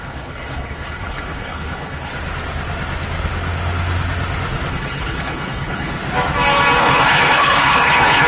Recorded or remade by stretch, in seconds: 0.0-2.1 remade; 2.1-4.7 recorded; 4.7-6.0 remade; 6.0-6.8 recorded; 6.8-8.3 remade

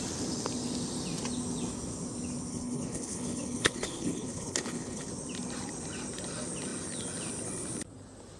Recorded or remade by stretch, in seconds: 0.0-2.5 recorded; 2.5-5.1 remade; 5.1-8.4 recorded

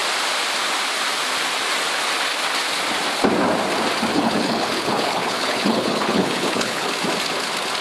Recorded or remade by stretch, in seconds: 0.0-4.1 recorded; 4.1-6.9 remade; 6.9-7.8 recorded

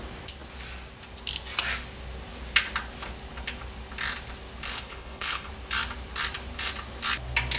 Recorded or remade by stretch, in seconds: 0.0-4.7 recorded; 4.7-5.5 remade; 5.5-7.6 recorded